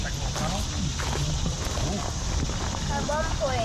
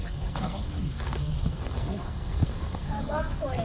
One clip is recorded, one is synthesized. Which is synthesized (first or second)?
second